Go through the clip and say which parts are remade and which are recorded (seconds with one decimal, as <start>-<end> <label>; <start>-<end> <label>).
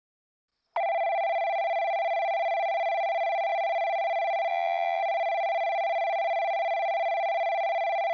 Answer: 0.0-4.5 recorded; 4.5-5.0 remade; 5.0-8.1 recorded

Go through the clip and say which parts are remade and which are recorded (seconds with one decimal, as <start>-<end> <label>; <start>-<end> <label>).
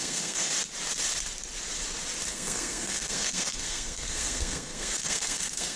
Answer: 0.0-0.5 remade; 0.5-2.3 recorded; 2.3-5.8 remade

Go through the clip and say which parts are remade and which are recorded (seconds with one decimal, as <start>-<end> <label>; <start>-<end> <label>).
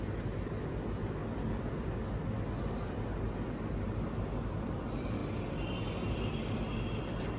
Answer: 0.0-7.4 recorded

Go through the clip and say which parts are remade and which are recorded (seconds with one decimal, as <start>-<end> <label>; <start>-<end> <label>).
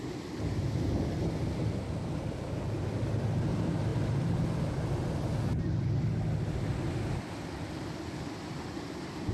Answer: 0.0-9.3 recorded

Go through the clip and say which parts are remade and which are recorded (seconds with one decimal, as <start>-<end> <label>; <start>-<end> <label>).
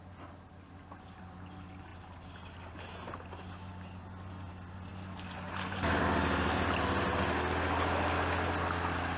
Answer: 0.0-9.2 recorded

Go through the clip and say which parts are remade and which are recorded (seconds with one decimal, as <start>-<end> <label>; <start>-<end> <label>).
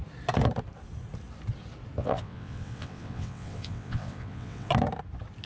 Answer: 0.0-2.0 recorded; 2.0-4.7 remade; 4.7-5.5 recorded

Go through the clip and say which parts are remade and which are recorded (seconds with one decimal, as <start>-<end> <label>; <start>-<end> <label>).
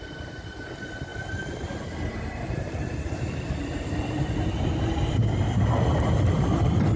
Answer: 0.0-1.1 recorded; 1.1-5.3 remade; 5.3-7.0 recorded